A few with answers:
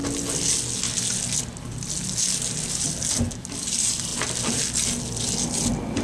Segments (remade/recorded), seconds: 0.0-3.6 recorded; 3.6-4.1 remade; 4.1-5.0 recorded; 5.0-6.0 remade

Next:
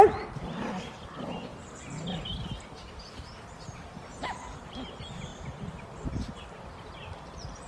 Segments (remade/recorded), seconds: 0.0-7.7 recorded

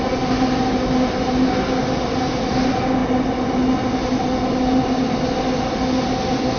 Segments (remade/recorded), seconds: 0.0-6.6 recorded